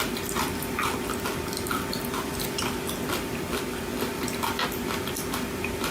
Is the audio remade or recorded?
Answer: recorded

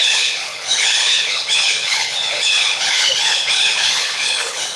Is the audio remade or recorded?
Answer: remade